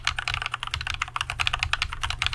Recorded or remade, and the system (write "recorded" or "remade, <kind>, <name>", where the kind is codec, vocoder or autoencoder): recorded